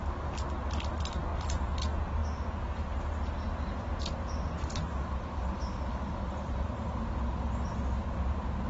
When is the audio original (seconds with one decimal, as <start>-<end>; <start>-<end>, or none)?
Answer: 0.0-2.2; 7.4-8.7

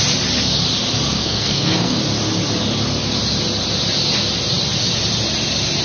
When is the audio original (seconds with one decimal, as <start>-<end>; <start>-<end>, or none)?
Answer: 0.0-1.1; 2.0-5.8

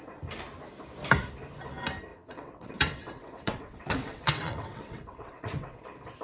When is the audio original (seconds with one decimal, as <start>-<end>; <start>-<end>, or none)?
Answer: 0.0-2.1; 5.8-6.2